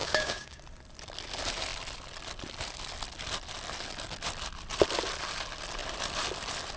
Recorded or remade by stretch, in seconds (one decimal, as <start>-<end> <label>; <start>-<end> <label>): 0.0-0.6 remade; 0.6-6.8 recorded